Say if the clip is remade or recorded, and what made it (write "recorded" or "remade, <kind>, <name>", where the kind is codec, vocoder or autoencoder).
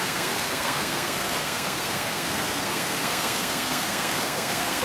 remade, codec, SNAC